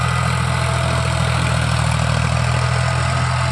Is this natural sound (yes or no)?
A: yes